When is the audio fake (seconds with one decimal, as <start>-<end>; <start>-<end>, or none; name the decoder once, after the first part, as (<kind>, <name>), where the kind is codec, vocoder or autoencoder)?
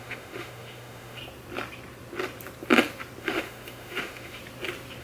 0.0-1.2 (autoencoder, DAC-VAE); 3.2-4.4